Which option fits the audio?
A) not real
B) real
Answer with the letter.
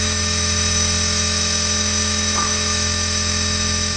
A